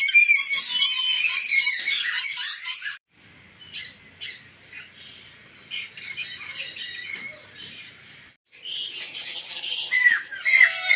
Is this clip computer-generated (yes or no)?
yes